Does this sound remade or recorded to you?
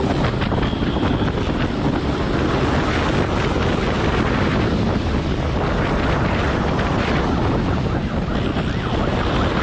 recorded